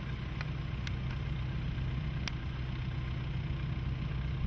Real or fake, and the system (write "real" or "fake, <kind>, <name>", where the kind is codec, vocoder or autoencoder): real